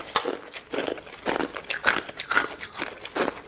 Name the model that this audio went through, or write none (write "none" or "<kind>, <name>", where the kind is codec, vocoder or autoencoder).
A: none